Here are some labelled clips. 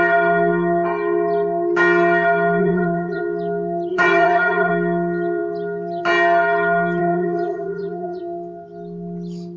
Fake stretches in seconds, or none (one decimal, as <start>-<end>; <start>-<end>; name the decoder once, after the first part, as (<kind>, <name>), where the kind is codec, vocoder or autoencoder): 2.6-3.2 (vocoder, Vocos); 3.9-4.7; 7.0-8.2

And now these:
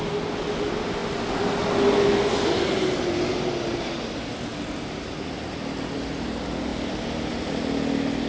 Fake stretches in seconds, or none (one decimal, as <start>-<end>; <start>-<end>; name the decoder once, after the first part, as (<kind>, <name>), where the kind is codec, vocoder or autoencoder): none

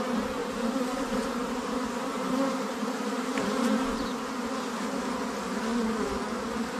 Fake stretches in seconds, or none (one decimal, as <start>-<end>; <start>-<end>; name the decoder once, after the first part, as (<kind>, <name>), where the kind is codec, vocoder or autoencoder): 0.4-4.5 (vocoder, BigVGAN v2)